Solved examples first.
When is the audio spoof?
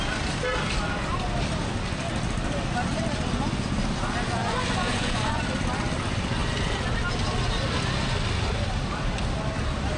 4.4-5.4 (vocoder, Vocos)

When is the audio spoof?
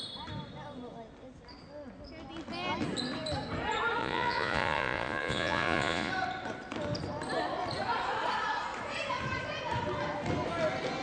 4.0-6.1 (vocoder, Vocos)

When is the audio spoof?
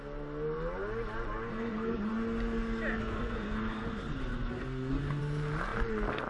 1.5-2.1 (codec, SNAC); 3.0-5.2